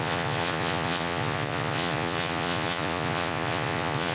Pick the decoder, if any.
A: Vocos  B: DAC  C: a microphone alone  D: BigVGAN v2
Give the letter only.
A